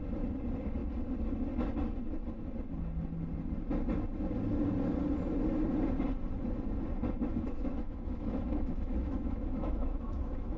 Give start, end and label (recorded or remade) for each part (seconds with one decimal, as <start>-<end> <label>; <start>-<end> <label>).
0.0-7.3 recorded; 7.3-10.6 remade